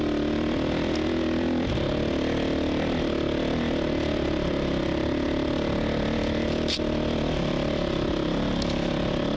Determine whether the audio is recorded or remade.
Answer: recorded